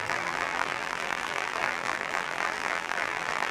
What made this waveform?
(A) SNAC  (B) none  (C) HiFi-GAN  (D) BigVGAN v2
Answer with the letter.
D